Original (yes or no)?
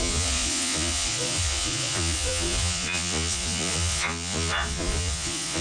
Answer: no